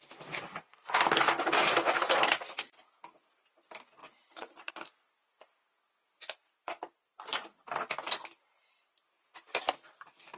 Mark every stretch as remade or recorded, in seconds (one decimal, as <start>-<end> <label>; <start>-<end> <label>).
0.0-4.0 recorded; 4.0-4.7 remade; 4.7-10.4 recorded